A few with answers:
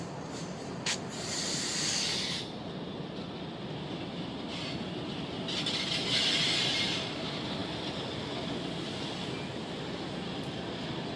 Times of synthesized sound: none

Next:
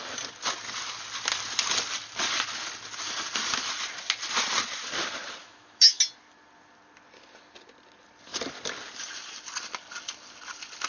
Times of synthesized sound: 5.4-6.0